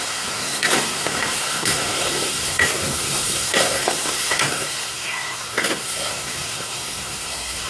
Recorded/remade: remade